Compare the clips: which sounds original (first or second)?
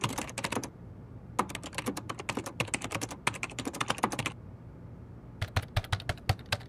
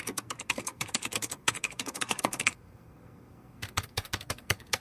first